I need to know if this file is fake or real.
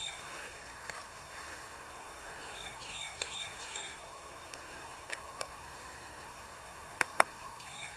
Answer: fake